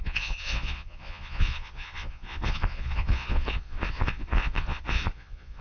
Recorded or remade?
remade